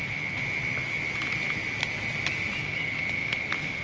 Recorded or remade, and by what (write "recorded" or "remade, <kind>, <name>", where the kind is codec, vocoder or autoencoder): recorded